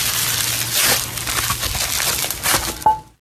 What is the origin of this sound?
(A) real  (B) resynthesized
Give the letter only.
A